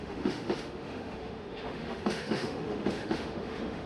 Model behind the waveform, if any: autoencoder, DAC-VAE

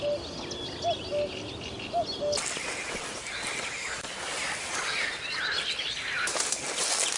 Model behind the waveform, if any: none